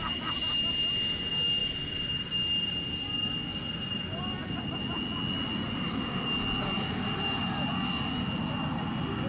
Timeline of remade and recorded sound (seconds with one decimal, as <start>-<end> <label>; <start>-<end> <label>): 0.0-9.3 recorded